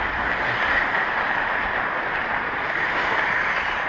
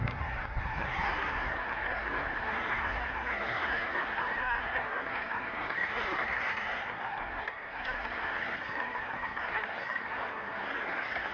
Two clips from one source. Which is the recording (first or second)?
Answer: first